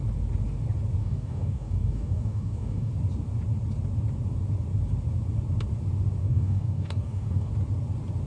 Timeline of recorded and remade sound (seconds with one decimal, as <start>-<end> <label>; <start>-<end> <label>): 0.0-1.0 recorded; 1.0-2.9 remade; 2.9-6.2 recorded; 6.2-7.5 remade; 7.5-8.3 recorded